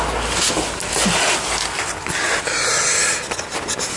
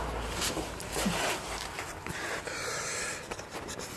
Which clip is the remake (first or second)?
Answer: second